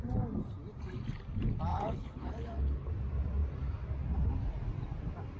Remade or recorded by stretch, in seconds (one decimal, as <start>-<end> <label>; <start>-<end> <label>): 0.0-1.7 recorded; 1.7-2.9 remade; 2.9-5.4 recorded